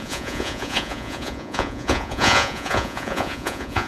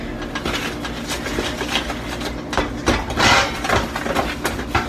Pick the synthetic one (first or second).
first